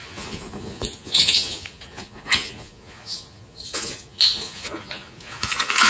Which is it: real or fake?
fake